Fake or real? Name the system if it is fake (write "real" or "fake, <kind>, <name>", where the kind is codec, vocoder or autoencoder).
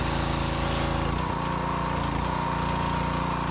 real